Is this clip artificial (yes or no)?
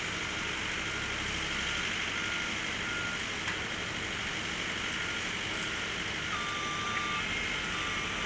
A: no